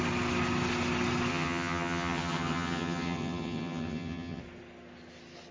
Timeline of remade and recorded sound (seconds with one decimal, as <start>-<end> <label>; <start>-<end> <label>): 0.0-1.3 recorded; 1.3-4.4 remade; 4.4-5.5 recorded